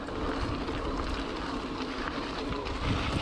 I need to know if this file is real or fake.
real